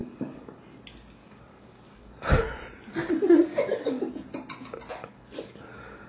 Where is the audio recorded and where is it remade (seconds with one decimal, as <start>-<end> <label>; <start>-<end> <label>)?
0.0-0.6 remade; 0.6-1.2 recorded; 1.2-2.4 remade; 2.4-3.5 recorded; 3.5-4.1 remade; 4.1-5.0 recorded; 5.0-6.1 remade